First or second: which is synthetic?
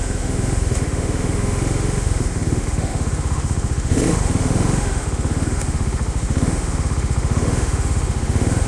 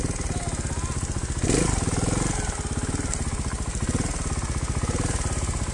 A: first